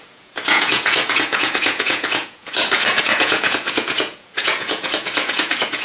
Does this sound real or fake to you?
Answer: fake